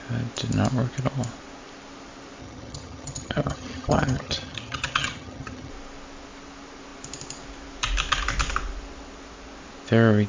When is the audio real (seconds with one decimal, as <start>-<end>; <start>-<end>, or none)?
0.0-2.4; 5.7-10.3